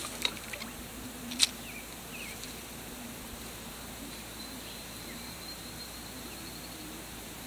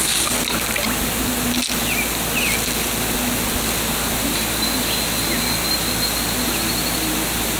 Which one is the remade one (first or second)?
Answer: first